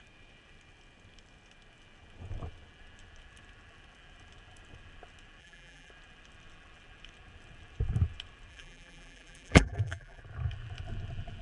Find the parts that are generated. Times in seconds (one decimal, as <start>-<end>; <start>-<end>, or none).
5.4-5.9; 8.5-10.2